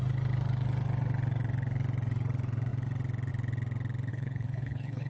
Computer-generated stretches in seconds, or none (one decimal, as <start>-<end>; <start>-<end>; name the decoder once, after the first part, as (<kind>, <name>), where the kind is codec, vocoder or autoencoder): 4.1-5.1 (codec, HILCodec)